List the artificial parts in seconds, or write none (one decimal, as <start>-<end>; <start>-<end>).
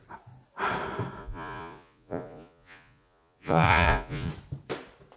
1.2-4.3